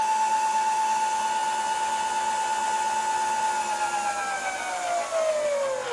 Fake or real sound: real